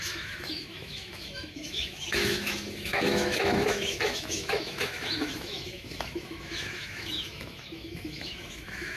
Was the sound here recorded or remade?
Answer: remade